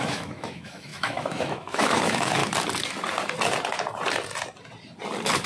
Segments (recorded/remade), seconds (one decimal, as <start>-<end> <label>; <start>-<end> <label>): 0.0-2.4 remade; 2.4-5.5 recorded

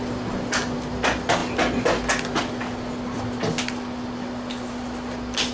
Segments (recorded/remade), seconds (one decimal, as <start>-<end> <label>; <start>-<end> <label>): 0.0-5.5 recorded

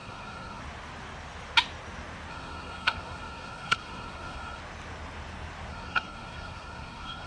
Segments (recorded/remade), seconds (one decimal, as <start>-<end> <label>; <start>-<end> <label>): 0.0-0.6 remade; 0.6-2.3 recorded; 2.3-4.6 remade; 4.6-5.7 recorded; 5.7-7.3 remade

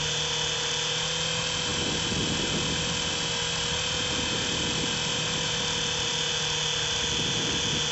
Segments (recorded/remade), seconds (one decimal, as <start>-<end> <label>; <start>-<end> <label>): 0.0-7.9 recorded